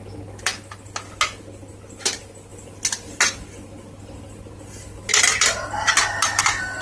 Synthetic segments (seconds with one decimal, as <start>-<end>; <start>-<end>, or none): none